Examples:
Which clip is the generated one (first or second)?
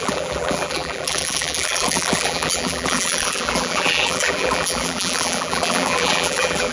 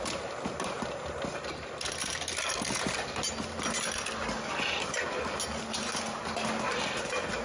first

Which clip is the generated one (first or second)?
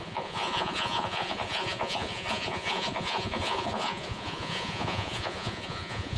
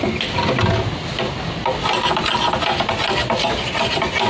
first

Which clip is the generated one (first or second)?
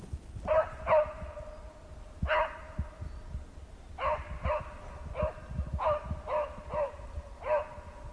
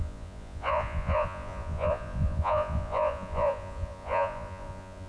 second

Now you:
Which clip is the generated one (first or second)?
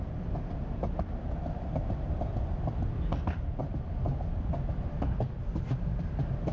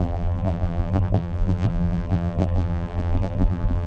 second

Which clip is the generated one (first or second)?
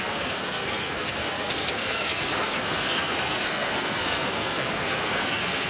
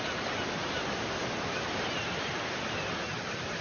first